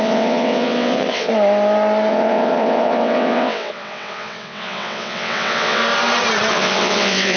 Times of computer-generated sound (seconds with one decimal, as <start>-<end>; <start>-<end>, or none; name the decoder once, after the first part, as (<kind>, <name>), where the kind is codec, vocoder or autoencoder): 0.0-1.3 (vocoder, WaveNeXt); 2.1-5.8; 6.5-7.4